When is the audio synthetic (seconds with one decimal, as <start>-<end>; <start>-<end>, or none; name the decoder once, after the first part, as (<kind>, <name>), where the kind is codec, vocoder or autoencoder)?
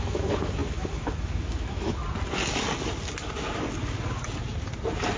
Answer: 0.0-2.0 (autoencoder, DAC-VAE)